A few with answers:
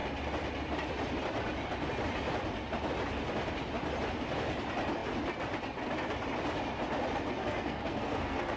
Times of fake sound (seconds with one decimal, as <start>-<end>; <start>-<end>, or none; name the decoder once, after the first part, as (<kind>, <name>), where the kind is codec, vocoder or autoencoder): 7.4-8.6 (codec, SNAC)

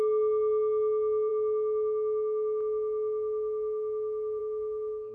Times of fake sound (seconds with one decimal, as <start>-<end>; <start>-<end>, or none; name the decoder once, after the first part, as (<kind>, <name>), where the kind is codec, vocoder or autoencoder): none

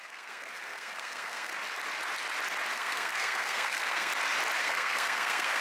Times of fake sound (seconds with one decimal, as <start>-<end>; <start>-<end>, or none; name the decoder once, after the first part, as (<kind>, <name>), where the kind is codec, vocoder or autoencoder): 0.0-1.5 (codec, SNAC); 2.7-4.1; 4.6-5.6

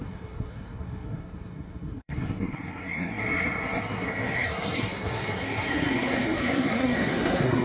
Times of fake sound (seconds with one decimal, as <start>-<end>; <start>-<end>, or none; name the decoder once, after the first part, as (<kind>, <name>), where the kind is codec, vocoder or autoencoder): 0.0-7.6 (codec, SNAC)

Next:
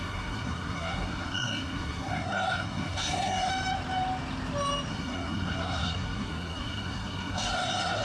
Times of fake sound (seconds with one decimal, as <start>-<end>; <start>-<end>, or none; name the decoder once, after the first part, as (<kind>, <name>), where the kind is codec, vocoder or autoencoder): 0.0-3.5 (codec, SNAC); 4.9-8.0

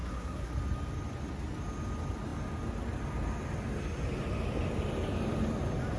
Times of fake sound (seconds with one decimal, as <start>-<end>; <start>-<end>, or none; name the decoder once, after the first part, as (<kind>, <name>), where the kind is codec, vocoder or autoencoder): 0.0-0.5 (codec, SNAC)

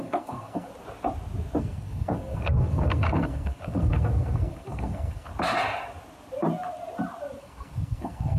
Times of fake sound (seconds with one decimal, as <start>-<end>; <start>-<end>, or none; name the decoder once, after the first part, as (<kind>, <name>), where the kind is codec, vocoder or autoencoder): 0.0-0.7 (codec, SNAC); 1.6-5.3; 7.4-8.4

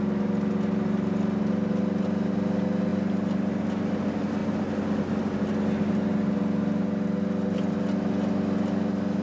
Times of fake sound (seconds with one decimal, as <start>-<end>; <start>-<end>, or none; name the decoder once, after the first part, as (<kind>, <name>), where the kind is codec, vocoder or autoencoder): none